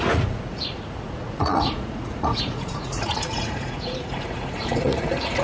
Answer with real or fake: fake